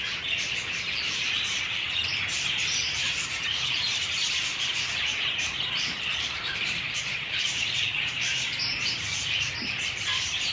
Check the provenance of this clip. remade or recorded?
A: remade